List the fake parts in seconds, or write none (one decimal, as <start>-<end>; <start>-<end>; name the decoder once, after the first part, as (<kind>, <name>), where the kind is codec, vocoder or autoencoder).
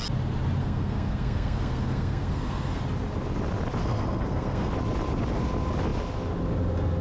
0.6-2.8 (codec, SNAC); 3.8-4.7